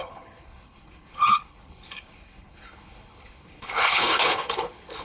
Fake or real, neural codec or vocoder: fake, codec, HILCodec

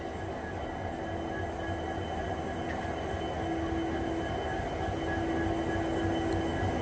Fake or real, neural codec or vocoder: real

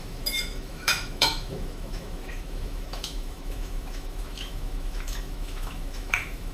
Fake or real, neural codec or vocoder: fake, autoencoder, DAC-VAE